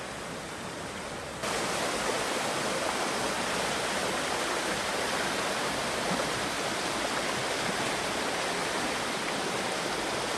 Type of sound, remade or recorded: recorded